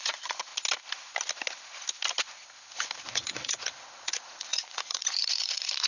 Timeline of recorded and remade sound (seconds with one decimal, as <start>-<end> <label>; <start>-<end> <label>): 0.0-0.5 remade; 0.5-3.0 recorded; 3.0-5.9 remade